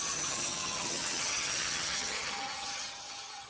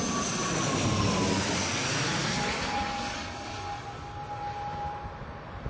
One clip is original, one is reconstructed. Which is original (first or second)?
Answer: second